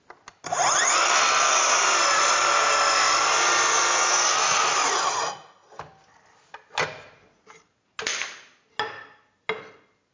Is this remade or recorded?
recorded